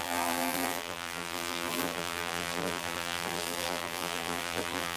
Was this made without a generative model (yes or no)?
no